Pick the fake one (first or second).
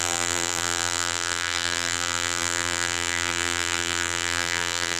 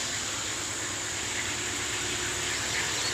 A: first